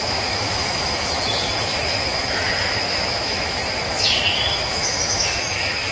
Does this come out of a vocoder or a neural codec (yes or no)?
yes